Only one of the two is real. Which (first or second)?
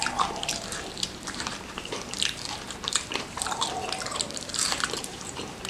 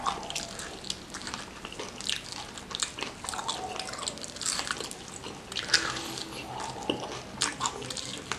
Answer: second